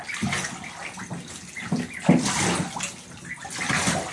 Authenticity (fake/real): real